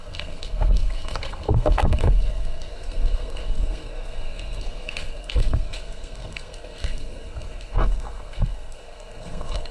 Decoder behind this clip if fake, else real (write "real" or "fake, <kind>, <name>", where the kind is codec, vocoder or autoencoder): fake, codec, SNAC